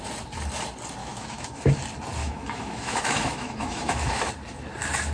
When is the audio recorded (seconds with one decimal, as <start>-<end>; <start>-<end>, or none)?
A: 0.0-1.0; 1.7-2.2; 4.3-5.1